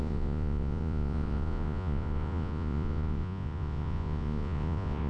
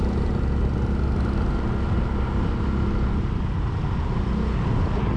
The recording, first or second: second